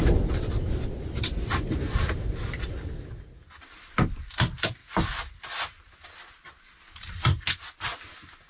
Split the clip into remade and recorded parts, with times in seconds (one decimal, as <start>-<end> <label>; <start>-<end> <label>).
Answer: 0.0-8.5 recorded